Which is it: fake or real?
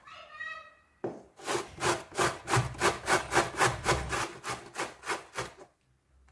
real